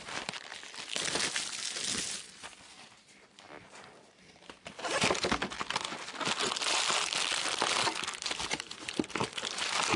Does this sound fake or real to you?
fake